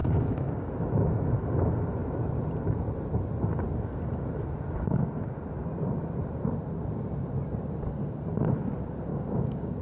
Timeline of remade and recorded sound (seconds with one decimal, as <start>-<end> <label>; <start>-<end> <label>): 0.0-0.7 remade; 0.7-9.1 recorded; 9.1-9.8 remade